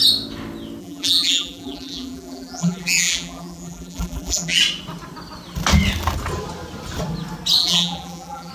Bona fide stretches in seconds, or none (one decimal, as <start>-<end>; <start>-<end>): 0.0-0.8; 4.6-7.6